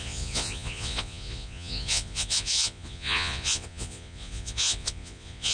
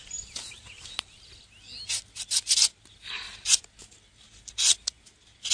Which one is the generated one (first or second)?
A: first